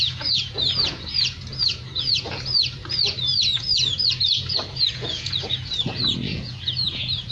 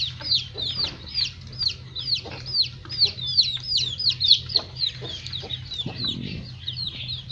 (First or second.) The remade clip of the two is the first